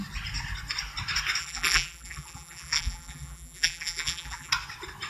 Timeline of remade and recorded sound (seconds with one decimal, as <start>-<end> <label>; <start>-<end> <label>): 0.0-1.4 recorded; 1.4-4.5 remade; 4.5-5.1 recorded